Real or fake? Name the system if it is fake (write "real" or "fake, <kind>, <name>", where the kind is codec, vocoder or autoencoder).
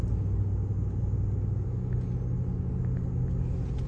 real